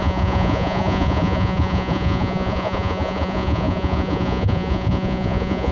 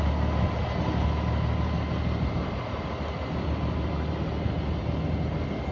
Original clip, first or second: second